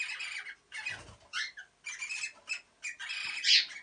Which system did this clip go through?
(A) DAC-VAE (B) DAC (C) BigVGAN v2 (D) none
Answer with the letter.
D